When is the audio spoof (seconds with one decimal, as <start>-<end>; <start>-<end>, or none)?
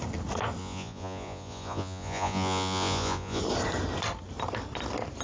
0.6-3.4